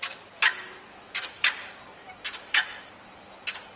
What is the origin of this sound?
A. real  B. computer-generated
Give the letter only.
A